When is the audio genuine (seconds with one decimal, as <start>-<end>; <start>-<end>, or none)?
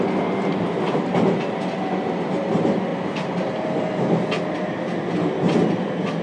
0.0-6.2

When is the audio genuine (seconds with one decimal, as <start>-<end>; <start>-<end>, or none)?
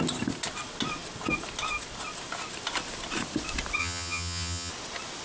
0.0-3.8; 4.7-5.2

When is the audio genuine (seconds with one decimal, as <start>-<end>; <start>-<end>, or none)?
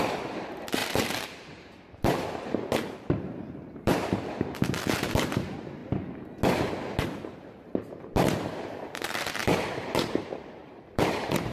5.8-7.0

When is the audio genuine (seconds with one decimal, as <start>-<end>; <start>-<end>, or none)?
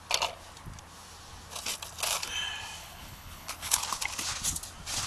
0.0-2.8; 3.8-5.1